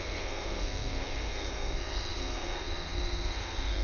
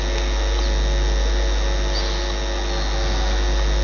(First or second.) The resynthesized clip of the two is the first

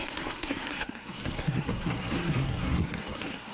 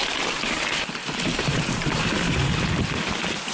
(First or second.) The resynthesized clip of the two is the first